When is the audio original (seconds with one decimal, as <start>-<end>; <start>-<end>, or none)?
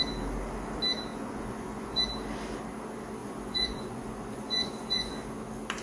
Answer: 0.0-1.1; 2.0-3.2; 5.1-5.8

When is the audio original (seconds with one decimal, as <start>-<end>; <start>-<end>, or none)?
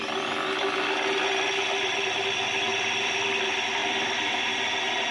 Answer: 0.0-2.7; 3.4-3.8; 4.3-5.1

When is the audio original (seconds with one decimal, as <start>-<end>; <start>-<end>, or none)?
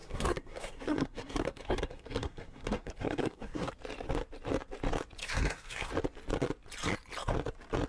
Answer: 3.7-5.2; 5.9-7.9